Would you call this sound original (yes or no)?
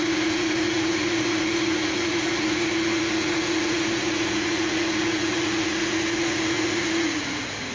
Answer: no